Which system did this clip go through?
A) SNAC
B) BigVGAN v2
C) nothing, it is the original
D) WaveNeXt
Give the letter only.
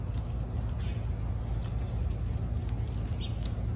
C